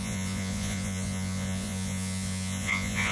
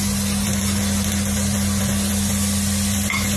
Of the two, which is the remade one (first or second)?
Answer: first